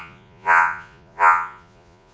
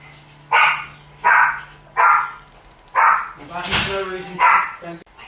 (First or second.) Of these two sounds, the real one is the second